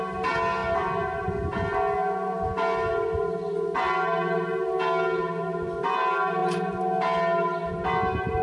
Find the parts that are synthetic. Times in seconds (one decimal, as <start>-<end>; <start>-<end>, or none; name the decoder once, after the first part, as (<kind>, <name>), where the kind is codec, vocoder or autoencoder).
none